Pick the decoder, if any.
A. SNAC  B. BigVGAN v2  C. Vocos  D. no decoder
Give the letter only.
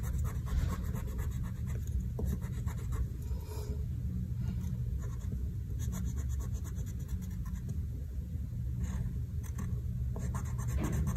D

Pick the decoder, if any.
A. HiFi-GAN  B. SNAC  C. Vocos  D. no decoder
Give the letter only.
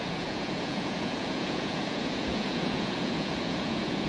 C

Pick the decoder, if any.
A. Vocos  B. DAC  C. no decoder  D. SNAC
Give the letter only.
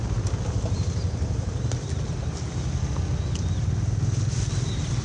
C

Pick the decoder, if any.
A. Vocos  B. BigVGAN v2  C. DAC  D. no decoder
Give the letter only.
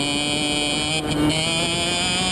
D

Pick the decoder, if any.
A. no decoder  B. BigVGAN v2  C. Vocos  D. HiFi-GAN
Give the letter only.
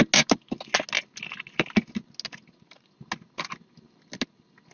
A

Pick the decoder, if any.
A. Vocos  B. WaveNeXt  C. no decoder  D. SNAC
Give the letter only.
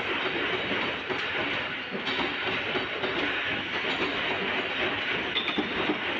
C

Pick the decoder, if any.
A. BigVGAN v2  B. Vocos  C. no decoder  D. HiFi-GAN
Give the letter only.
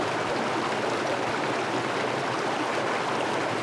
C